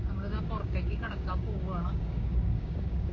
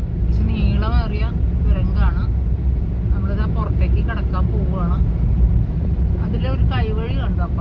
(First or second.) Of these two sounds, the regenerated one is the first